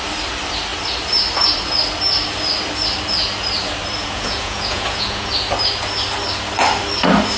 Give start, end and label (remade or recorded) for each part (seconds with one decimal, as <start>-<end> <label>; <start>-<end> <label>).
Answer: 0.0-4.0 recorded; 4.0-5.3 remade; 5.3-7.4 recorded